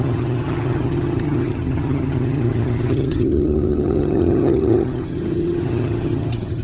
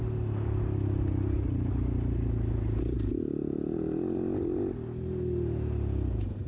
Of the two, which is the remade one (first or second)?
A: first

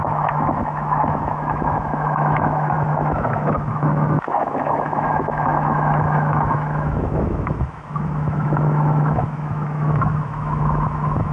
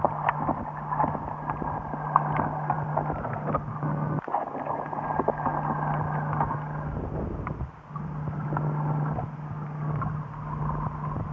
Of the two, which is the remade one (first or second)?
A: first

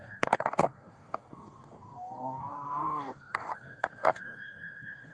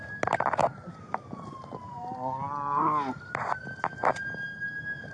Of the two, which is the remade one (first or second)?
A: first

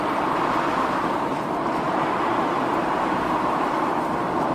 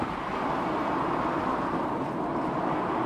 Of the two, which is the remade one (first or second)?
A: first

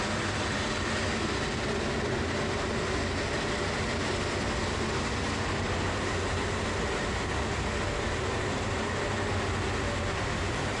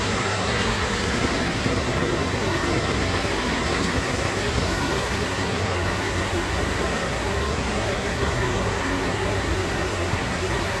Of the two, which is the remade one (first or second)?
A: second